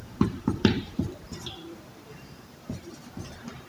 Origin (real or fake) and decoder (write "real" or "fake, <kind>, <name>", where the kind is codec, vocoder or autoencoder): fake, vocoder, BigVGAN v2